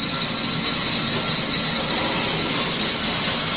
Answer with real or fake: real